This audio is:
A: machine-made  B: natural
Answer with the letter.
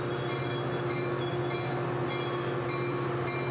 B